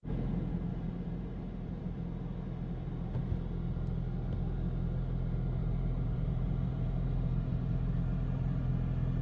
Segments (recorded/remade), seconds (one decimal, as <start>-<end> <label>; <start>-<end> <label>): 0.0-0.7 recorded; 0.7-1.8 remade; 1.8-5.6 recorded; 5.6-8.6 remade; 8.6-9.2 recorded